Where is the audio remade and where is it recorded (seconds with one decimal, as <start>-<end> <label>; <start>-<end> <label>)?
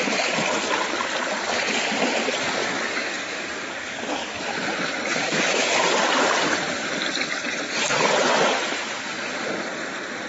0.0-2.6 recorded; 2.6-4.4 remade; 4.4-5.2 recorded; 5.2-5.7 remade; 5.7-10.3 recorded